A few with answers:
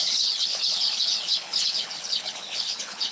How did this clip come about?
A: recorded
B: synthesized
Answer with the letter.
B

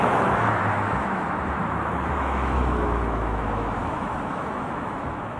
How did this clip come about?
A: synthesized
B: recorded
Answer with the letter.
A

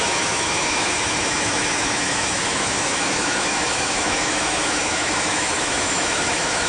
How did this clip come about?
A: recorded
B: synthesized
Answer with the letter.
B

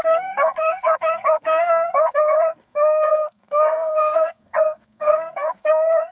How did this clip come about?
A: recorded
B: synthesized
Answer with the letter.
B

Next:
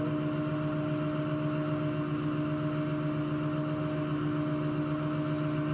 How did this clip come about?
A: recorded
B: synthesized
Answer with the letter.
A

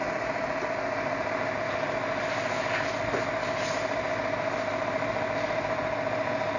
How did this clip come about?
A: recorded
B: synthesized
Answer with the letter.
A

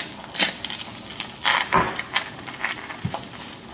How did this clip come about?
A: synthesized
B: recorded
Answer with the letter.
B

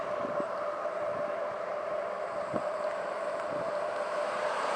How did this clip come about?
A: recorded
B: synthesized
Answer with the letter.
B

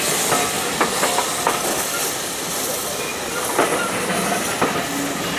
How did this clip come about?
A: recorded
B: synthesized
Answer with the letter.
A